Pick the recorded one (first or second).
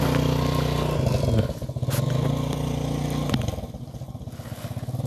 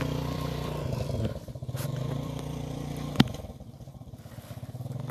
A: first